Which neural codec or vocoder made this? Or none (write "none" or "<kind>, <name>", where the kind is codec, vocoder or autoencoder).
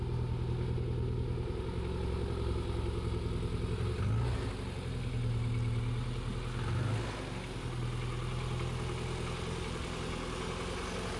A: none